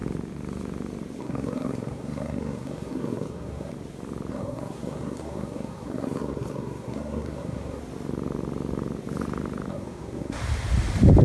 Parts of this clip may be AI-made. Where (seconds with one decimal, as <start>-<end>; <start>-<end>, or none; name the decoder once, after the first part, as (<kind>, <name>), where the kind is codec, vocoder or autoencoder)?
1.2-3.7 (codec, SNAC); 4.3-7.8; 9.7-10.4

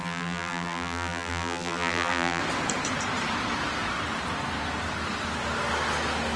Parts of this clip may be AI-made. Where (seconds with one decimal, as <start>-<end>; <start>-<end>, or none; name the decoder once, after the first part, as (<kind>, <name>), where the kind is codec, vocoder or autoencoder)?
0.0-2.4 (vocoder, BigVGAN v2)